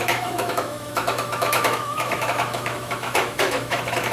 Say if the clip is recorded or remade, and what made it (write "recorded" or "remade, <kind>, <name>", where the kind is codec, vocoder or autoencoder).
remade, autoencoder, DAC-VAE